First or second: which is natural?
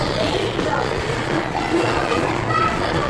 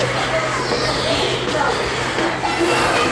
second